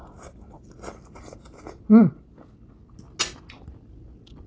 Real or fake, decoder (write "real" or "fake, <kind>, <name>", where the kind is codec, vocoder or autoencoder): real